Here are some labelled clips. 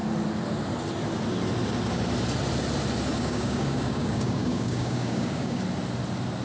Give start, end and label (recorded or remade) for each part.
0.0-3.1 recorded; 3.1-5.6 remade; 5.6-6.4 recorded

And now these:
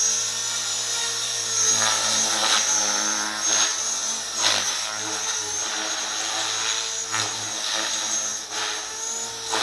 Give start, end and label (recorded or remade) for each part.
0.0-1.0 recorded; 1.0-1.7 remade; 1.7-9.6 recorded

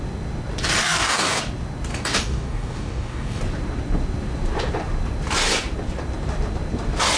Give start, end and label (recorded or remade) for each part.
0.0-0.8 recorded; 0.8-1.4 remade; 1.4-1.9 recorded; 1.9-3.4 remade; 3.4-7.2 recorded

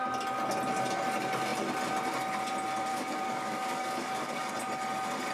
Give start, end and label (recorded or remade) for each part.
0.0-2.9 recorded; 2.9-4.5 remade; 4.5-5.3 recorded

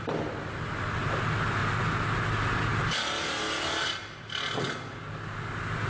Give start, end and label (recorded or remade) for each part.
0.0-5.9 recorded

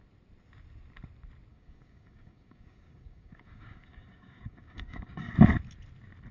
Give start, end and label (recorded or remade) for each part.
0.0-1.5 recorded; 1.5-5.3 remade; 5.3-6.3 recorded

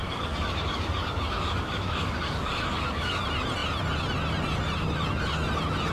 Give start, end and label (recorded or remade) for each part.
0.0-3.2 remade; 3.2-5.9 recorded

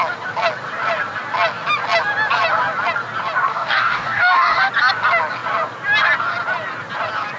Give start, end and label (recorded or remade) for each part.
0.0-3.5 recorded; 3.5-4.7 remade; 4.7-7.4 recorded